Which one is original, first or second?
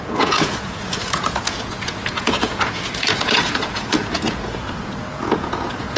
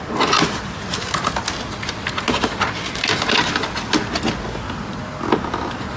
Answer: second